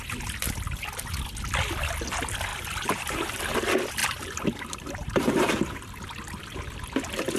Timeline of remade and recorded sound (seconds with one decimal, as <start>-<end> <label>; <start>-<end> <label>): 0.0-2.5 recorded; 2.5-3.3 remade; 3.3-4.0 recorded; 4.0-5.5 remade; 5.5-7.4 recorded